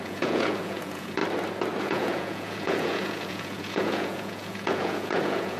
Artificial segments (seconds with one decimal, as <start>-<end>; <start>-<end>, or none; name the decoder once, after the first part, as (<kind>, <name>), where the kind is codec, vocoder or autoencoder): 0.0-1.2 (vocoder, Vocos); 1.8-5.6